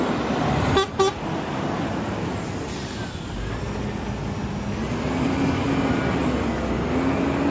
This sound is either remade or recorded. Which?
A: recorded